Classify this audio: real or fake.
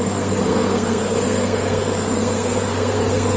fake